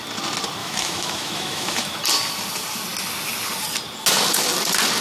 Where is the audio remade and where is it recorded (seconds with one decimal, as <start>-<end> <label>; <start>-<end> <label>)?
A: 0.0-0.6 recorded; 0.6-2.0 remade; 2.0-5.0 recorded